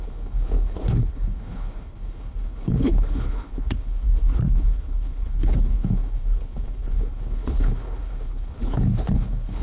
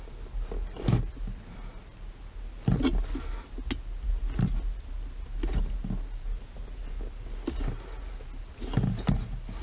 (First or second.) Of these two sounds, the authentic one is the second